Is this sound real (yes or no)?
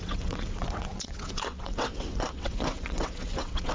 no